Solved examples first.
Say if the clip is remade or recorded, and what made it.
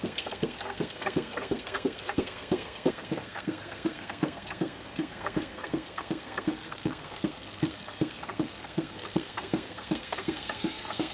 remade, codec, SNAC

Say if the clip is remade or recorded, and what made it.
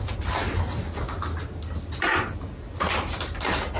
recorded